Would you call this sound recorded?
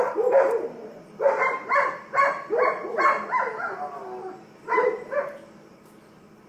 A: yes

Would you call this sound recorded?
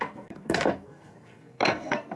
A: no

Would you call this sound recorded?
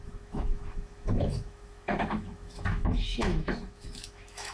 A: no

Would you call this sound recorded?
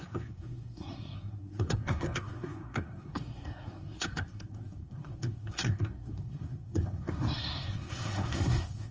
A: no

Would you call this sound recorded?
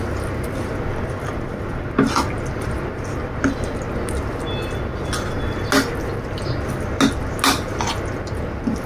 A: yes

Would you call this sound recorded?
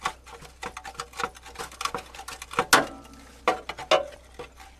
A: yes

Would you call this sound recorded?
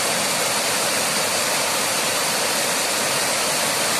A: no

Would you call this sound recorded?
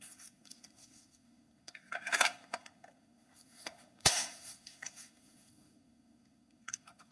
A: no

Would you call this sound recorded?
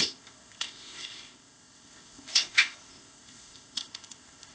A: no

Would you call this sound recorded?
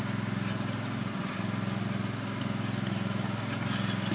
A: yes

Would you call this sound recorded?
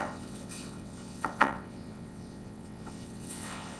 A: no